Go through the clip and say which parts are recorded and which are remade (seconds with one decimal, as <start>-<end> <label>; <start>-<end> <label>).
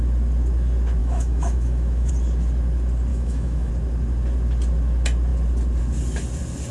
0.0-1.0 recorded; 1.0-2.1 remade; 2.1-3.1 recorded; 3.1-3.7 remade; 3.7-6.7 recorded